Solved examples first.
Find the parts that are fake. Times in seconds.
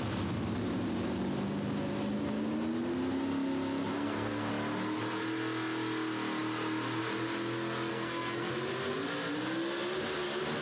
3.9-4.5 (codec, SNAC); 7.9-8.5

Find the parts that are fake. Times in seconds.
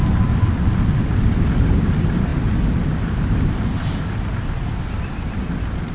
none